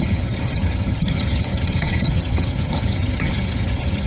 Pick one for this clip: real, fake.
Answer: fake